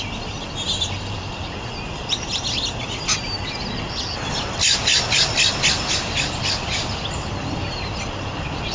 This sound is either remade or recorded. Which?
recorded